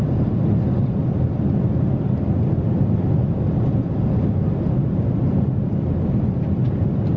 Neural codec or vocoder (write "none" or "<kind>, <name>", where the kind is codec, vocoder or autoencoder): none